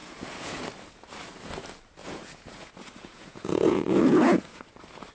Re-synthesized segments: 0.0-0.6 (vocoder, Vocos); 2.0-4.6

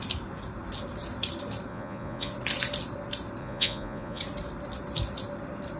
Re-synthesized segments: 1.7-2.3 (vocoder, Vocos); 3.4-4.2